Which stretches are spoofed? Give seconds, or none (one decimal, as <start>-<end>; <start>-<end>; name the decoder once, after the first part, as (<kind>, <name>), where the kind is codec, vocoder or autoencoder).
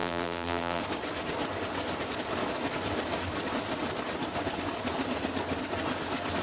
0.0-0.8 (vocoder, BigVGAN v2)